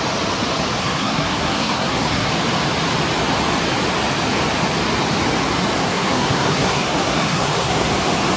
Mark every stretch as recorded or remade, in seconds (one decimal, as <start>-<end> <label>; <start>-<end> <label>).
0.0-0.8 recorded; 0.8-2.3 remade; 2.3-5.8 recorded; 5.8-7.9 remade; 7.9-8.4 recorded